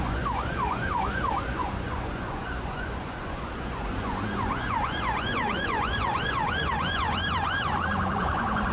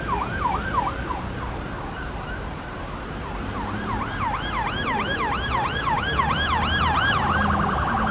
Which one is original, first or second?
second